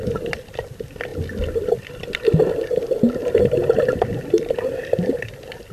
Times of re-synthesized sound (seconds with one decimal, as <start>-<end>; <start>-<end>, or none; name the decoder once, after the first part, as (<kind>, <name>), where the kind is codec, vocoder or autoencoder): none